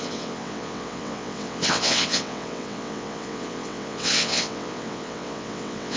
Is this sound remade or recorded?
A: remade